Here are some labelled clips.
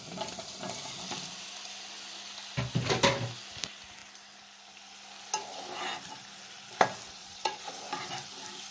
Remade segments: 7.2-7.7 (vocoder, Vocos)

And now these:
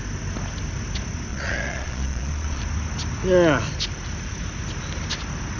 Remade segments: 1.3-2.6 (vocoder, Vocos)

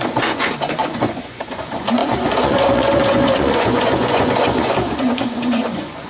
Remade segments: 0.0-6.1 (vocoder, Vocos)

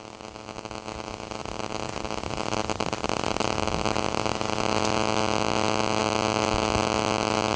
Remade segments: none

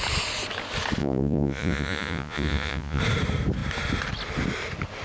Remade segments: 1.0-3.0 (vocoder, Vocos)